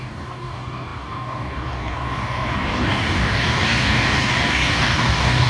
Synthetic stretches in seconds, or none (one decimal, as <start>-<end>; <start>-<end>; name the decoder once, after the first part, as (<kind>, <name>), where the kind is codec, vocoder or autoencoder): 0.0-5.5 (codec, DAC)